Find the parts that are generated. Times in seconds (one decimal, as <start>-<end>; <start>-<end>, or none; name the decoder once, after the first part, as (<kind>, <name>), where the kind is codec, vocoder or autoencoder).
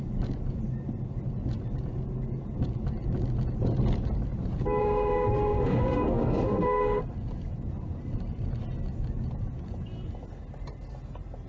4.8-7.0 (autoencoder, DAC-VAE)